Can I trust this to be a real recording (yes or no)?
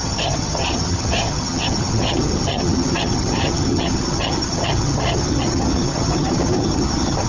no